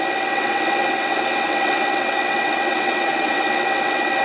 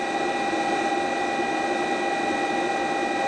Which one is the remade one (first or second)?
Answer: first